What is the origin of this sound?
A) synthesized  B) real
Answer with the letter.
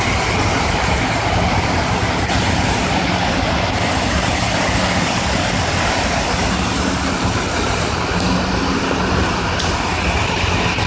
B